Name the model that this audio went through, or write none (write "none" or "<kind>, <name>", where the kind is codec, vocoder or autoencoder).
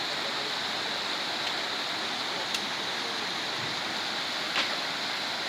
none